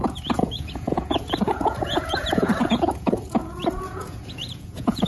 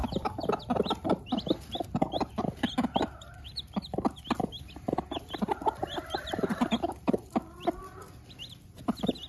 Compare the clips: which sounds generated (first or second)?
first